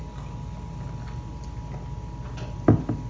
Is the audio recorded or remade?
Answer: recorded